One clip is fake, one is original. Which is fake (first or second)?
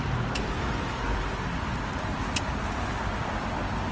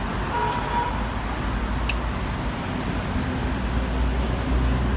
first